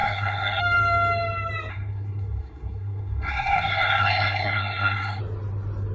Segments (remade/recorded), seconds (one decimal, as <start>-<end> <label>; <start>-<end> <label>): 0.0-0.6 remade; 0.6-1.7 recorded; 1.7-5.2 remade; 5.2-5.9 recorded